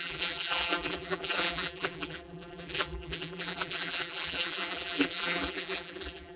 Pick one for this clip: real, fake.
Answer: fake